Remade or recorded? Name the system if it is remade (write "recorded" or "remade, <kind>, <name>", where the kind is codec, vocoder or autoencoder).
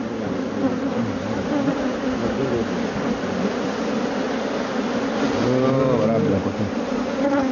recorded